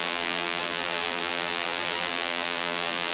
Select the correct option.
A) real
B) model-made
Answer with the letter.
B